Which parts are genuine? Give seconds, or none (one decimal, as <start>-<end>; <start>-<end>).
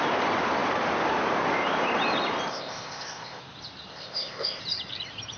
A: 0.0-2.5; 3.4-3.9; 4.6-5.4